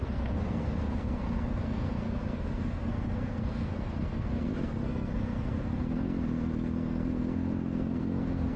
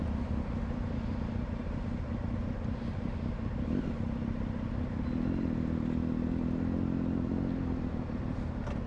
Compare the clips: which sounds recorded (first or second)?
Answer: second